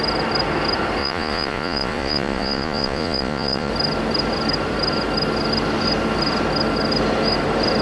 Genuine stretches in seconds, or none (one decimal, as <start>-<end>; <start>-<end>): 0.0-1.0; 3.7-7.8